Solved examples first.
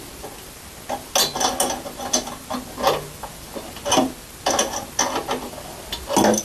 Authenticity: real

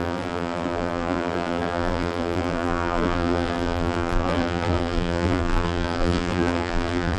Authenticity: fake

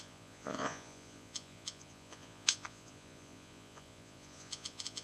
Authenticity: fake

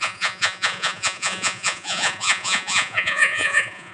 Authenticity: fake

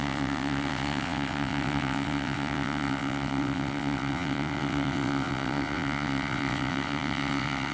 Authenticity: fake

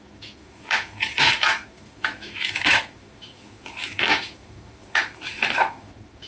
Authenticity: fake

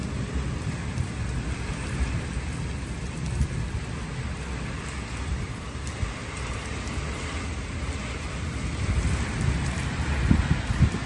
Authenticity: real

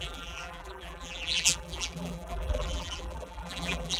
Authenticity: fake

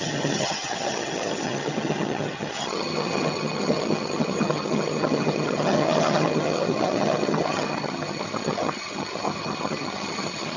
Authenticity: fake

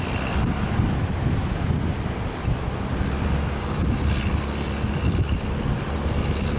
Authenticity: real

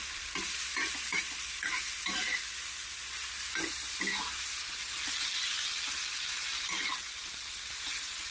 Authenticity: real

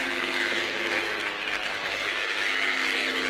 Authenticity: fake